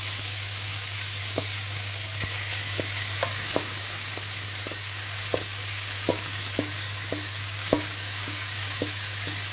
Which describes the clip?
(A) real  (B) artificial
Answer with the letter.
B